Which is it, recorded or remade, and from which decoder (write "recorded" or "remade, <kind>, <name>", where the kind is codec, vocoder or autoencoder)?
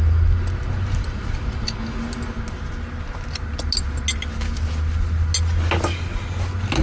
recorded